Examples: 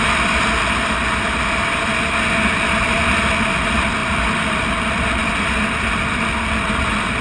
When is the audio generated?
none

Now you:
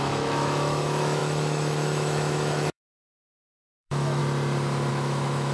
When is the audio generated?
0.0-4.2; 4.9-5.5

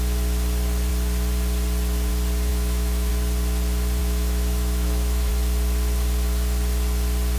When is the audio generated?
2.5-3.1; 4.0-5.3

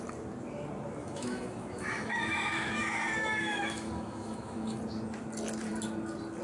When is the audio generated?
1.0-4.8

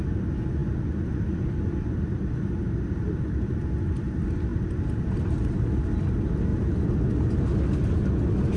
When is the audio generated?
none

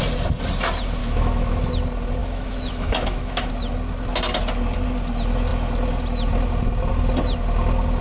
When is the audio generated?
1.0-1.7; 2.2-3.5

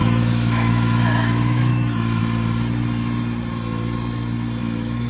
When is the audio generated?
0.0-2.2; 4.6-5.1